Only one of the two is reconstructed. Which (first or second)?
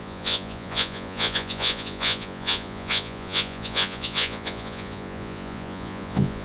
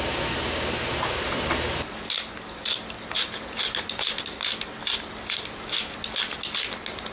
first